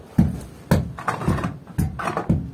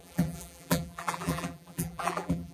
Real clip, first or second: first